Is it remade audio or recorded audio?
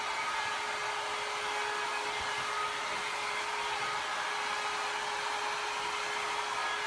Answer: recorded